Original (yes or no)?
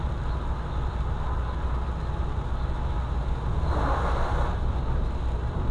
yes